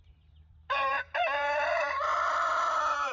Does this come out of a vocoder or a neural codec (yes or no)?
yes